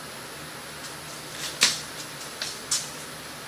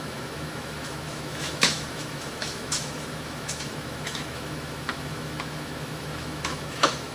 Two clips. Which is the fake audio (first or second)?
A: second